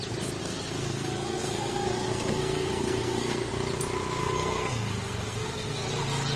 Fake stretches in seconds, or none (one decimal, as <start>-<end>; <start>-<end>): 0.4-3.5; 4.2-5.9